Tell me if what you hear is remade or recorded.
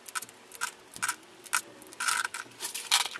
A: recorded